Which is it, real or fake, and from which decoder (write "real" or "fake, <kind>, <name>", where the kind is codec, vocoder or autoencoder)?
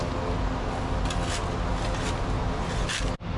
real